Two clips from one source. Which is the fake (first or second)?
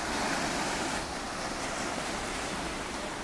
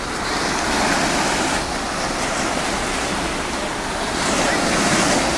first